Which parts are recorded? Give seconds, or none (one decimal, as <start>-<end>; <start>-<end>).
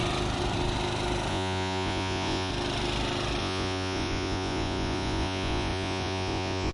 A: 0.0-1.3; 2.5-3.4